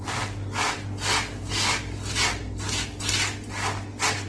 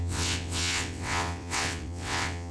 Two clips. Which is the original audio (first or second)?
first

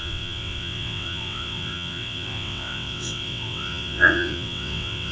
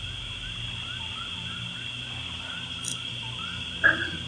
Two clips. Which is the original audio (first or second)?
second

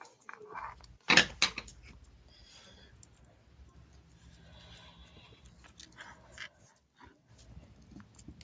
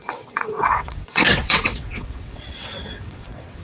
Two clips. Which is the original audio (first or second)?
first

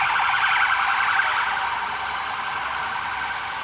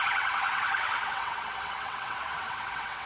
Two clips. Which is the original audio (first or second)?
first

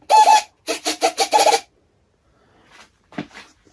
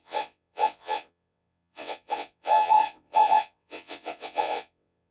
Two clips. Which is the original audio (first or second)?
first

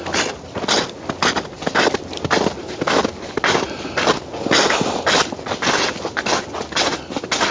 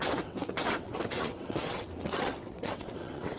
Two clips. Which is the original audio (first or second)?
first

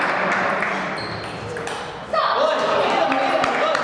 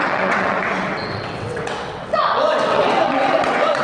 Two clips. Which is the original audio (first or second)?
first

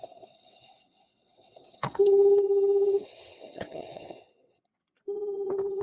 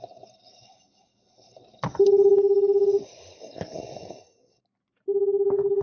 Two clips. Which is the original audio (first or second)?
second